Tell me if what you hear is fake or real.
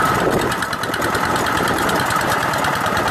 real